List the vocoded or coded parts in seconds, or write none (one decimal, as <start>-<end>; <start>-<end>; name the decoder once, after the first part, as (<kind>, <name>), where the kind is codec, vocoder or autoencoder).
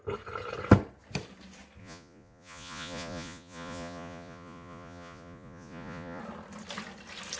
1.8-6.2 (vocoder, Vocos)